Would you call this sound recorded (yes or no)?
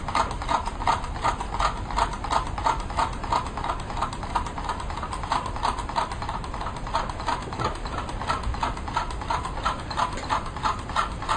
yes